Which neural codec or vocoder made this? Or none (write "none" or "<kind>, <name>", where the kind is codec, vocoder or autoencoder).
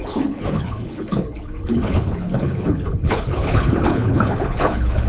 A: codec, HILCodec